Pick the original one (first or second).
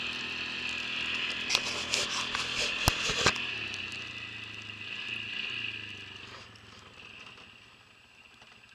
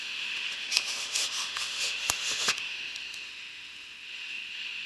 first